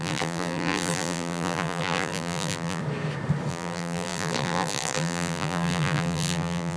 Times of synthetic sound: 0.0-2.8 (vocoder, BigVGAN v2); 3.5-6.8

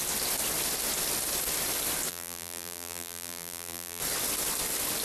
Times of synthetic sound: 2.1-4.0 (vocoder, BigVGAN v2)

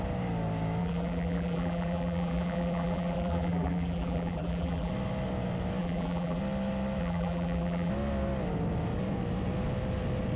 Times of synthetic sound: 0.8-4.9 (vocoder, BigVGAN v2); 5.8-6.4; 7.0-7.9

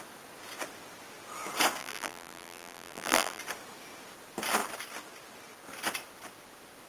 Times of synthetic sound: 1.8-3.4 (vocoder, BigVGAN v2)

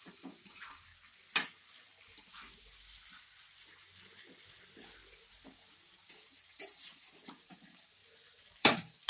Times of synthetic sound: 0.0-0.9 (vocoder, BigVGAN v2); 5.3-8.0; 8.6-9.1